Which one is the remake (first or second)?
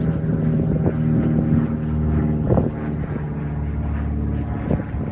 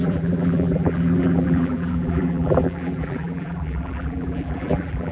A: second